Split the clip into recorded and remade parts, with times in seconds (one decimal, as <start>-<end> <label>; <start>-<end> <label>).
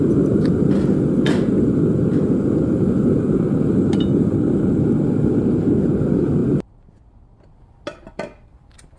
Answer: 0.0-9.0 remade